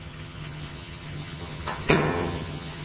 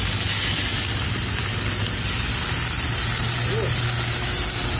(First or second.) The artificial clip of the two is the first